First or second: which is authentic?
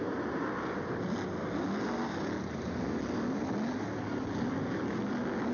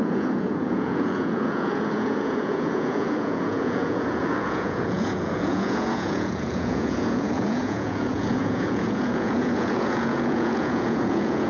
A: first